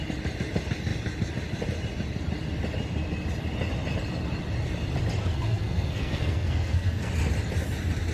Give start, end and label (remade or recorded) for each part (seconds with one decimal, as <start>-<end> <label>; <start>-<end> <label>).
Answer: 0.0-5.3 recorded; 5.3-7.1 remade; 7.1-8.1 recorded